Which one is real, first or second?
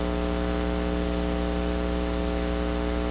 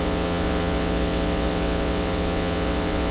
first